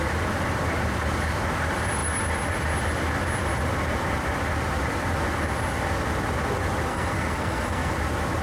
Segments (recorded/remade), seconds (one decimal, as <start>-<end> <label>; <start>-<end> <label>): 0.0-6.9 recorded; 6.9-7.9 remade; 7.9-8.4 recorded